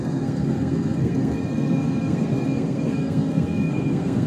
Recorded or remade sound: remade